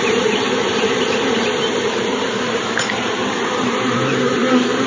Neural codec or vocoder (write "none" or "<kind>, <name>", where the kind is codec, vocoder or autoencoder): vocoder, BigVGAN v2